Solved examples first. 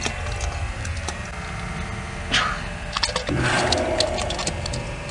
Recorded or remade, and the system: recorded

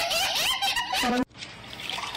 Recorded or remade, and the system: remade, vocoder, BigVGAN v2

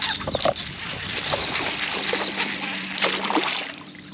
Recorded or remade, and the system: remade, vocoder, BigVGAN v2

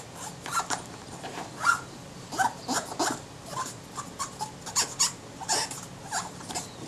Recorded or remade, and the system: recorded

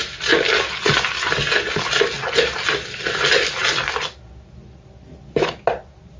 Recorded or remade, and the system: recorded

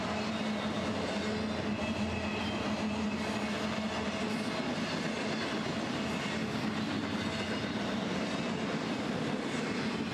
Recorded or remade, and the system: recorded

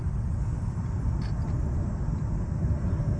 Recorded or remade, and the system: recorded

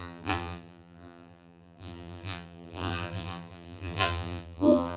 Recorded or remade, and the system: remade, vocoder, BigVGAN v2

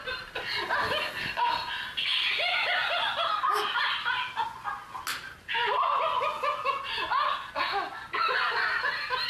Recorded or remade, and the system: recorded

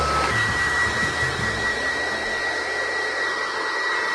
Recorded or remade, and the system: remade, vocoder, BigVGAN v2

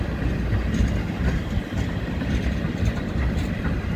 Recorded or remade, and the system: remade, vocoder, BigVGAN v2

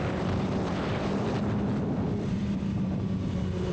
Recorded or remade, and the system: remade, vocoder, BigVGAN v2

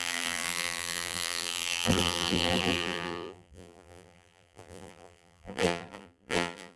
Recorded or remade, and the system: remade, vocoder, BigVGAN v2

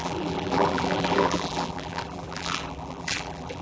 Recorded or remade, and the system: remade, vocoder, BigVGAN v2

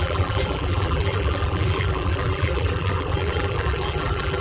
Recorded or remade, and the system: remade, vocoder, BigVGAN v2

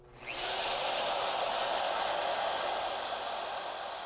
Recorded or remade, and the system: recorded